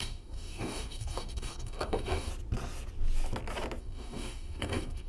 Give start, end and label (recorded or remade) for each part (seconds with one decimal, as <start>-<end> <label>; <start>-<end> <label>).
0.0-2.3 remade; 2.3-3.8 recorded; 3.8-5.1 remade